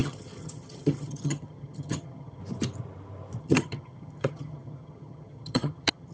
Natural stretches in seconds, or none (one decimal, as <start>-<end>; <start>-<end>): 2.4-3.4